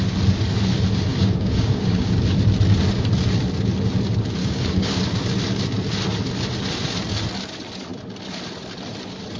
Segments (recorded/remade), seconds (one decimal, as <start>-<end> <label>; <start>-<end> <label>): 0.0-1.1 recorded; 1.1-2.2 remade; 2.2-4.4 recorded; 4.4-5.0 remade; 5.0-9.4 recorded